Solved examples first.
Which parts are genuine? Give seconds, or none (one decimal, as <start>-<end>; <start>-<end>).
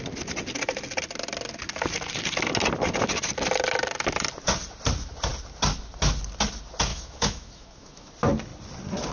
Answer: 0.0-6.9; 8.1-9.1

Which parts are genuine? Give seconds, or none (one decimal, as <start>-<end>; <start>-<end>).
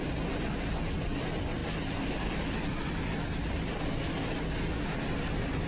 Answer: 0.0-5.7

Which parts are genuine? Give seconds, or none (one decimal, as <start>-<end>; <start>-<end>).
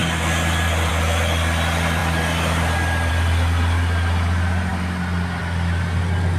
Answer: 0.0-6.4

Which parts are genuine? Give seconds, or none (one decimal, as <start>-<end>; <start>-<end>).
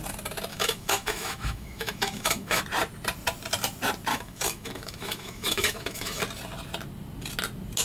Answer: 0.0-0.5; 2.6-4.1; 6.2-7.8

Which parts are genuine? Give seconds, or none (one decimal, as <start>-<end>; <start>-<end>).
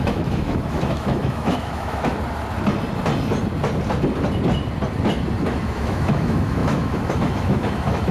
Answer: 2.1-5.4